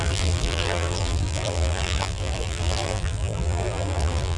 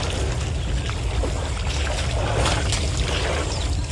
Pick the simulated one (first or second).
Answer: first